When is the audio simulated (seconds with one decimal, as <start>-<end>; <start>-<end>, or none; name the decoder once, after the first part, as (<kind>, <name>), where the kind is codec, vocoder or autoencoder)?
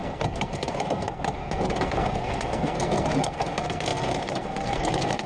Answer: 0.0-5.3 (codec, SNAC)